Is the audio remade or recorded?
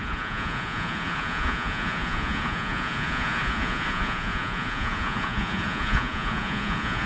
remade